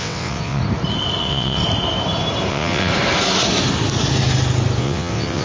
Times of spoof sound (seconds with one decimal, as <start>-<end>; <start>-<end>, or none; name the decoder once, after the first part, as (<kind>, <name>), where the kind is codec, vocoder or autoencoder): 0.0-0.6 (vocoder, WaveNeXt); 1.2-1.6; 2.5-2.9; 4.8-5.4